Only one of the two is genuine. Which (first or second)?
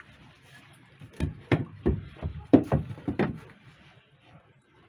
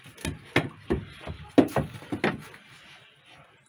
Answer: second